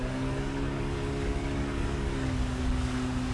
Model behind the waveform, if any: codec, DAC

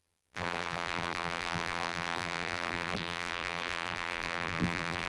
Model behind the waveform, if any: vocoder, BigVGAN v2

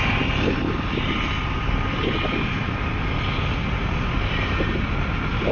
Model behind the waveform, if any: none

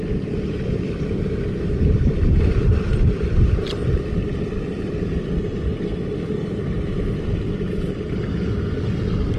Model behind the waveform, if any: none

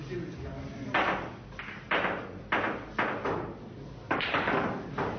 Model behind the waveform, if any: none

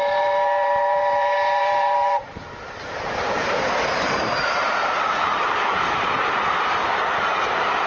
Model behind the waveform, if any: vocoder, BigVGAN v2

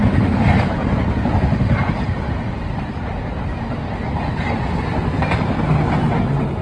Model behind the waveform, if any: vocoder, BigVGAN v2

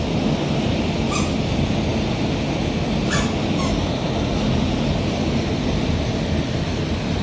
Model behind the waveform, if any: none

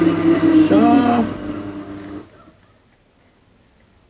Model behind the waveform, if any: none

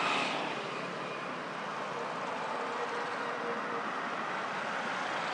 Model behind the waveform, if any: none